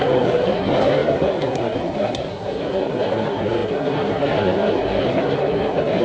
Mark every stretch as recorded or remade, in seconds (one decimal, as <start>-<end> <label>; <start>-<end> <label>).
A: 0.0-6.0 remade